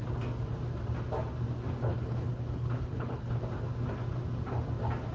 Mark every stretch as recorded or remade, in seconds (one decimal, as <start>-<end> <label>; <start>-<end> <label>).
0.0-1.9 recorded; 1.9-3.4 remade; 3.4-5.1 recorded